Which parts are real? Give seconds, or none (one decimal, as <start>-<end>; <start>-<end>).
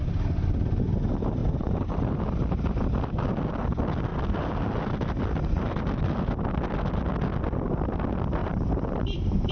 0.0-1.4; 2.8-8.4; 9.0-9.5